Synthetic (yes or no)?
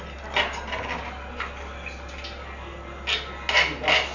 no